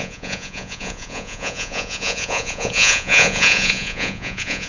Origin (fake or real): fake